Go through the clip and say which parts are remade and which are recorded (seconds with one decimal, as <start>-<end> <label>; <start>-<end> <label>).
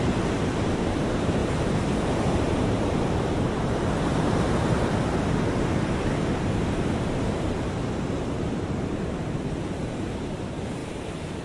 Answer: 0.0-11.4 remade